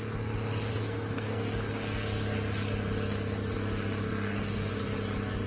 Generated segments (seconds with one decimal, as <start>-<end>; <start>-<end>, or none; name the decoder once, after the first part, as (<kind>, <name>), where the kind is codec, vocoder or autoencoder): 0.7-1.5 (codec, SNAC); 4.1-4.8